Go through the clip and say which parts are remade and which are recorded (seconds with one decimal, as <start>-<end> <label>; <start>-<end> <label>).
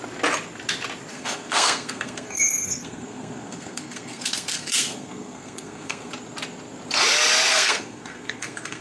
0.0-1.1 recorded; 1.1-6.1 remade; 6.1-7.5 recorded; 7.5-8.8 remade